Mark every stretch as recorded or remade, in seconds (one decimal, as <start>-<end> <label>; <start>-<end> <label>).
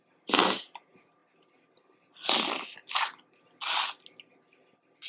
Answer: 0.0-5.1 recorded